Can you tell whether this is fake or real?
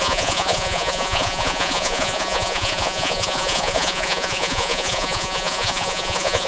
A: fake